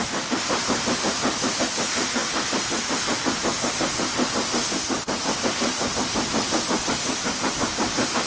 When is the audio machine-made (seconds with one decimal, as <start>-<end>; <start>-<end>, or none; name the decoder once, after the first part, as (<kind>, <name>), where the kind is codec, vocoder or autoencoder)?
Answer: none